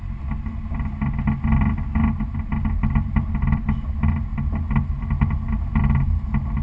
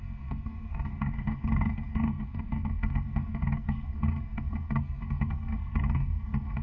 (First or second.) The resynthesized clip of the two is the second